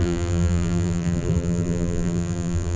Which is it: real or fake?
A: fake